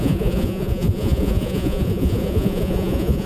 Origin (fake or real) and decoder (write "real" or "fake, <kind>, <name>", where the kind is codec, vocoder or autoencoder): fake, vocoder, Vocos